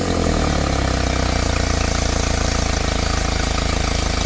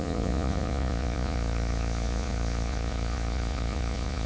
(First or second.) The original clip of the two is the first